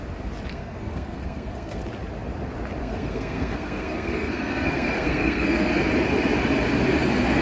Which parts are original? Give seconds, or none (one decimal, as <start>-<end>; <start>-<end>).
0.0-0.5; 1.8-2.8; 5.7-7.4